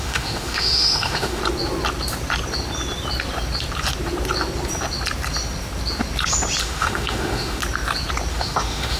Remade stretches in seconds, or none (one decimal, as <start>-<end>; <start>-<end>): 0.0-1.4; 6.6-7.6; 8.3-9.0